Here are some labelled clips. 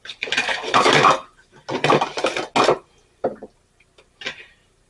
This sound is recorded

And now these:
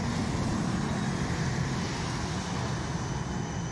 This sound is recorded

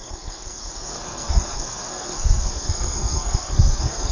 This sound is remade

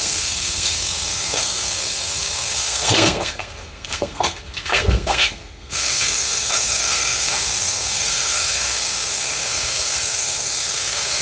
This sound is remade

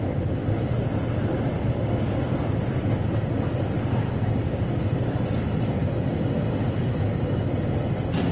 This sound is recorded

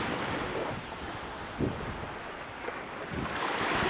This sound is recorded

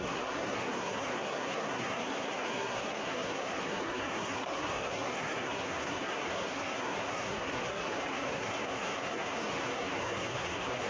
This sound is remade